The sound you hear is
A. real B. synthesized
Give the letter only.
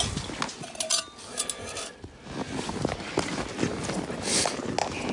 A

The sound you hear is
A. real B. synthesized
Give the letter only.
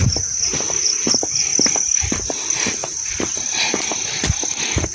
A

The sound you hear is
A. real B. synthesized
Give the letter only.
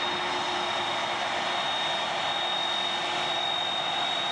A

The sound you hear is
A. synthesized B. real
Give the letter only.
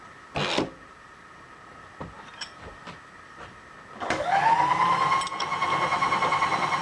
B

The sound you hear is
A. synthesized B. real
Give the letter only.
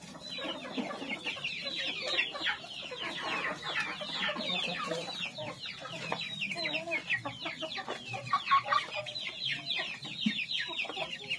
B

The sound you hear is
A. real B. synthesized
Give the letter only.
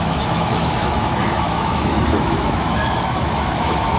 B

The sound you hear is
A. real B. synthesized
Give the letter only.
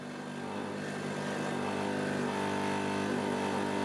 A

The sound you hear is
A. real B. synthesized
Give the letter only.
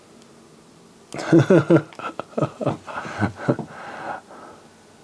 A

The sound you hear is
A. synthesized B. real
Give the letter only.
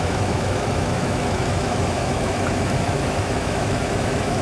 A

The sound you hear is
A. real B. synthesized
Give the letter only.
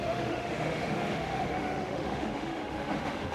B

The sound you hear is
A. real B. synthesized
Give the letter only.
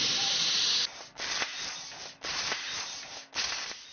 A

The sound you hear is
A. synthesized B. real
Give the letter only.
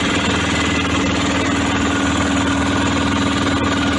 B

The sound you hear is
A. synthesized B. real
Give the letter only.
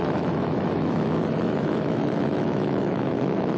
A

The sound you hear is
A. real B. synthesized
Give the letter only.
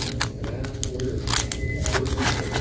A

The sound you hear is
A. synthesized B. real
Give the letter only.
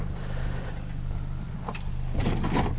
B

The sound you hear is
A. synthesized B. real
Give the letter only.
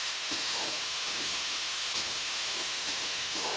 A